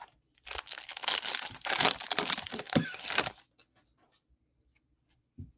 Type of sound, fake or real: real